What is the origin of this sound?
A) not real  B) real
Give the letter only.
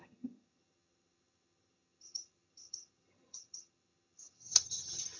A